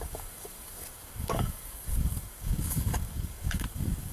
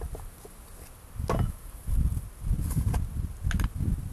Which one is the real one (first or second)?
second